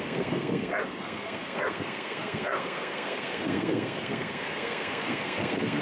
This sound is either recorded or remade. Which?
remade